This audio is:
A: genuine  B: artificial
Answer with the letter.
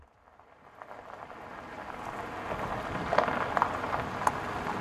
A